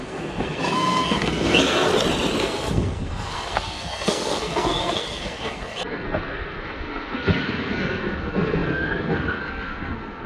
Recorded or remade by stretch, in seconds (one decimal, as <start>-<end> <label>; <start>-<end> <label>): 0.0-1.9 remade; 1.9-2.4 recorded; 2.4-10.3 remade